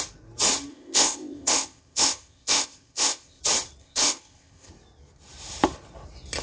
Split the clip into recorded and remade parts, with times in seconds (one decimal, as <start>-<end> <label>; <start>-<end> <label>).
0.0-0.7 recorded; 0.7-3.4 remade; 3.4-3.8 recorded; 3.8-4.7 remade; 4.7-6.4 recorded